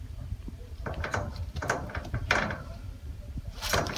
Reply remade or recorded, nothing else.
remade